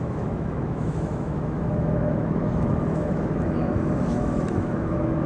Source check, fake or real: fake